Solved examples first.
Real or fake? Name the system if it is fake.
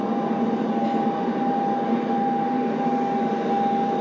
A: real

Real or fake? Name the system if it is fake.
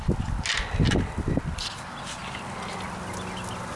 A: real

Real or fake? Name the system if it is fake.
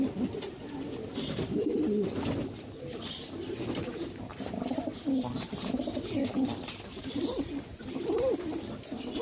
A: real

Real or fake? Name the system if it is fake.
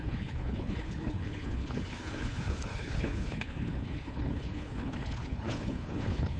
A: fake, codec, HILCodec